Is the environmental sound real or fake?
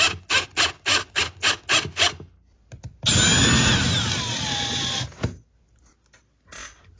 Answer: real